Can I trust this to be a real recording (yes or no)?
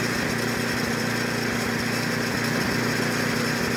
yes